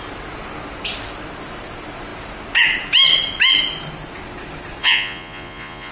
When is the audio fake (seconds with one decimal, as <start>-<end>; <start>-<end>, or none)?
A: 4.8-5.9